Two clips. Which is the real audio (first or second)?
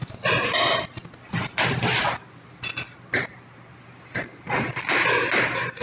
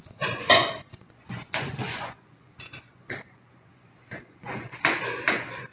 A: first